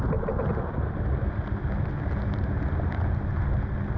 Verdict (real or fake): real